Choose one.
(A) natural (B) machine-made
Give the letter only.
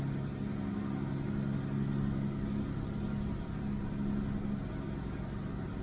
A